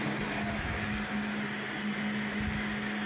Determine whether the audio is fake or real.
real